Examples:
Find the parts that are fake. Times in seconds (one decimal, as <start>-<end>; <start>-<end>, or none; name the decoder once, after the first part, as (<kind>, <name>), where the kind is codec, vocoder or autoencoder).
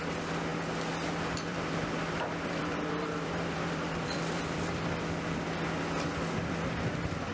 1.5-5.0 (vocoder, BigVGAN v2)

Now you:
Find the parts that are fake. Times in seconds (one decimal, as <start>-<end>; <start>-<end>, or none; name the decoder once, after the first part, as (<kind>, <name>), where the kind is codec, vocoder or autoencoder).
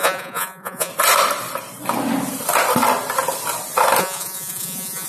0.0-0.9 (vocoder, Vocos); 4.0-5.1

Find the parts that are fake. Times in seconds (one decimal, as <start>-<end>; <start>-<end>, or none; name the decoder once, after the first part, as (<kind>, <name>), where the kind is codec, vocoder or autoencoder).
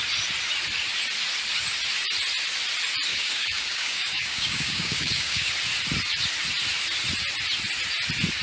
3.1-5.5 (codec, DAC)